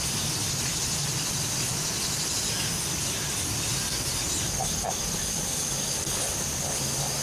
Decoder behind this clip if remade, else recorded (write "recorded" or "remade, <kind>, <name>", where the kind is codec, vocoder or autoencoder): recorded